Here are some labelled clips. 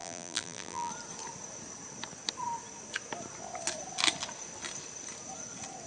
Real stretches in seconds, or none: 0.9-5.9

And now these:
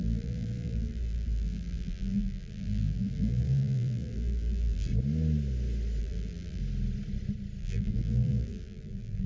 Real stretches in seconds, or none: 4.9-6.0; 6.6-7.6

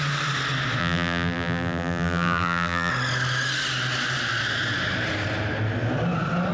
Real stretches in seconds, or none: 0.0-0.8; 2.9-6.5

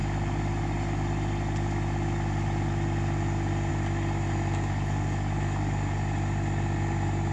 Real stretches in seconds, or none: 0.0-7.3

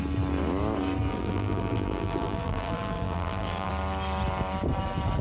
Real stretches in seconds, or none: 0.0-1.1; 3.7-5.2

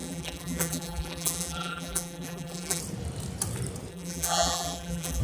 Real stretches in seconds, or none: 2.8-3.9

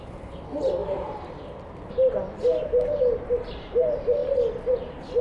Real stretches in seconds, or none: 4.2-5.2